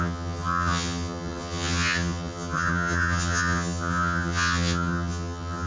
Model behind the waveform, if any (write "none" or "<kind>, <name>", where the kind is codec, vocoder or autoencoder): vocoder, HiFi-GAN